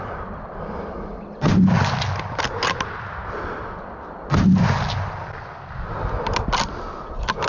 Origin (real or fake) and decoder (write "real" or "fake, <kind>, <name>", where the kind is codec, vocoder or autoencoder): real